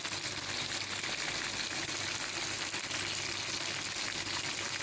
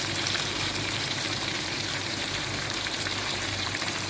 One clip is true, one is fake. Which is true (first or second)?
first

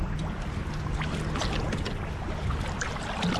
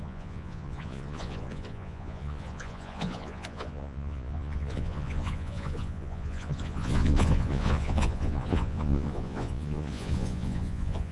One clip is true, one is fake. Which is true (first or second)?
first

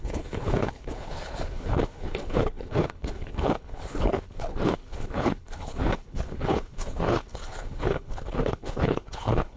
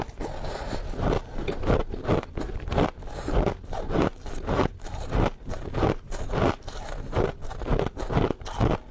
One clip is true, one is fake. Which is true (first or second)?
second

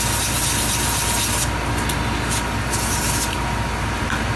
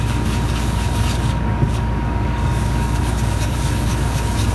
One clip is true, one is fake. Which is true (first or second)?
first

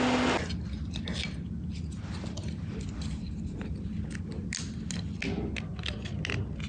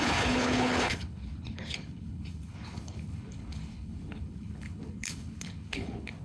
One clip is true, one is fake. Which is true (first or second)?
first